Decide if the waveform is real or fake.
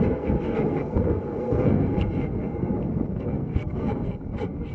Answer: fake